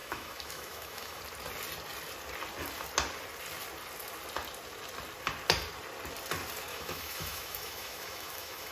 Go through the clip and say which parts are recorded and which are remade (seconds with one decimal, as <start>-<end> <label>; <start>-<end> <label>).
0.0-1.2 remade; 1.2-6.7 recorded; 6.7-8.7 remade